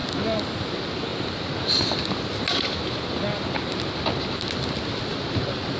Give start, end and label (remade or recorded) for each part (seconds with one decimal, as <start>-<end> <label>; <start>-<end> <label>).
0.0-5.8 recorded